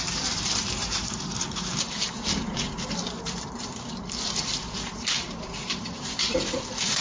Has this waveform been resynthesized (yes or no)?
yes